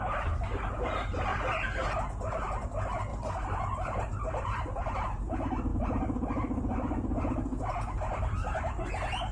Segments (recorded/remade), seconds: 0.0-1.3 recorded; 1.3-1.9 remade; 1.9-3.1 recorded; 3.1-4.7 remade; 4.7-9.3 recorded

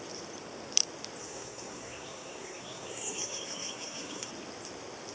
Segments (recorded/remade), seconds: 0.0-1.2 recorded; 1.2-4.3 remade; 4.3-5.1 recorded

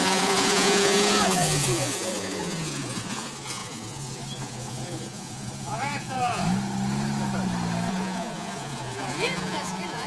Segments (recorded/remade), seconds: 0.0-6.4 remade; 6.4-7.9 recorded; 7.9-10.1 remade

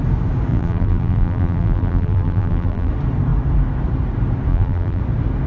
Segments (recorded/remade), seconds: 0.0-0.5 recorded; 0.5-2.9 remade; 2.9-4.5 recorded; 4.5-5.0 remade; 5.0-5.5 recorded